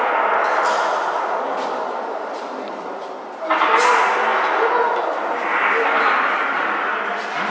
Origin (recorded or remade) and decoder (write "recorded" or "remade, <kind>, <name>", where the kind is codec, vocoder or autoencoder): recorded